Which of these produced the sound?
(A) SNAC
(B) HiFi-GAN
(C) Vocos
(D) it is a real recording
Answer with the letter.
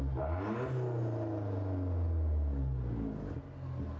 D